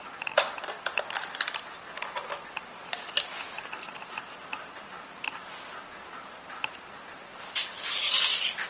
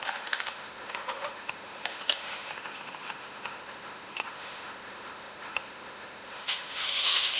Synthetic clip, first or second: second